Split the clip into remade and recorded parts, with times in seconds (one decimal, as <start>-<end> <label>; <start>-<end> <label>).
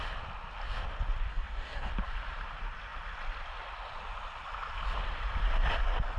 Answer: 0.0-1.3 recorded; 1.3-1.9 remade; 1.9-6.2 recorded